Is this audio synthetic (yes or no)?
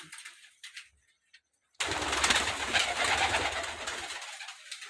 no